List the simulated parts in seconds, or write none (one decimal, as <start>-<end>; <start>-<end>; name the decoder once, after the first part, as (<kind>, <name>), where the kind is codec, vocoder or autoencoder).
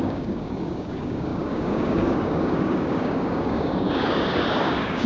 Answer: 0.0-5.1 (codec, DAC)